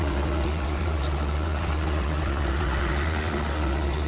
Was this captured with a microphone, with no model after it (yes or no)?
no